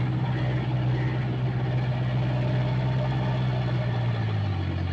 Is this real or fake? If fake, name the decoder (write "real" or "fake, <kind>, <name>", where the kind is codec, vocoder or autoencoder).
real